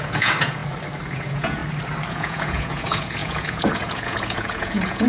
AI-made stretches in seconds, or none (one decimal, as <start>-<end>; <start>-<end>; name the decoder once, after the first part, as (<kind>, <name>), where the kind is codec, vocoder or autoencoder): 0.0-0.6 (vocoder, Vocos); 1.1-1.6; 2.1-5.1